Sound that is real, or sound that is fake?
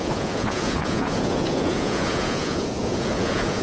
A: fake